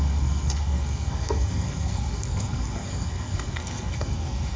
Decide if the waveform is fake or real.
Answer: fake